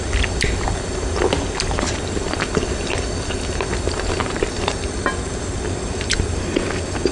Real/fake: real